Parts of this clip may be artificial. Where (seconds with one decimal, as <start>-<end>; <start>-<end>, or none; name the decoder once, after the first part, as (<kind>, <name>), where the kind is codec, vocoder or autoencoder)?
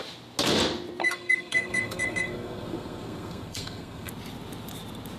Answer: 1.0-4.1 (codec, SNAC)